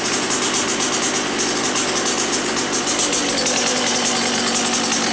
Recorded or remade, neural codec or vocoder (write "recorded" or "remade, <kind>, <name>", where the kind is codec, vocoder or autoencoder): recorded